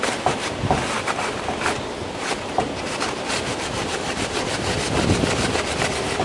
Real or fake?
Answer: fake